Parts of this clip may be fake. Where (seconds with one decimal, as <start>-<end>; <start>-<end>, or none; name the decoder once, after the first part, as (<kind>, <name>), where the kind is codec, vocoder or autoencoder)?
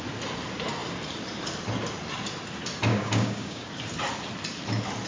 2.9-3.7 (codec, DAC)